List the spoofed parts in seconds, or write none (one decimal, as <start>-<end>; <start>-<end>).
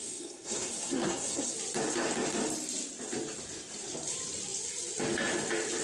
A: 0.0-1.5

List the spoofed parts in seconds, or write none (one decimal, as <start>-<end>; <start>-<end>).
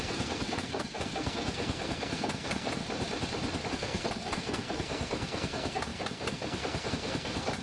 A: 0.0-2.8; 3.7-7.6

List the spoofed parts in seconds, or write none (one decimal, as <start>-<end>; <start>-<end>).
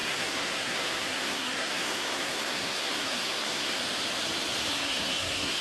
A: 0.0-3.8; 4.7-5.6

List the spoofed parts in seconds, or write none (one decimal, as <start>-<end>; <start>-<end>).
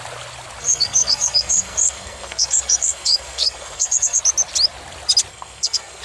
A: 0.6-4.2; 5.3-6.0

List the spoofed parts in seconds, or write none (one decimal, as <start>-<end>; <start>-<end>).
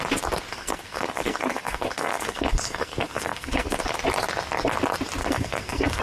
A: 0.5-3.8; 5.2-6.0